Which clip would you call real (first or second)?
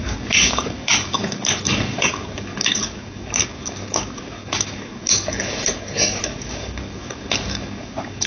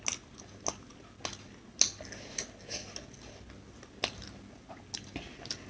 second